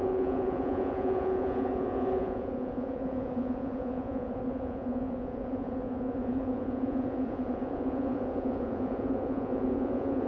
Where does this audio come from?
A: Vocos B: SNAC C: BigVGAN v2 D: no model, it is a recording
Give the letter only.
A